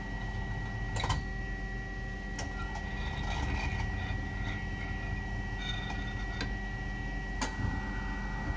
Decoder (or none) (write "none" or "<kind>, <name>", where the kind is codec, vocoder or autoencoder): none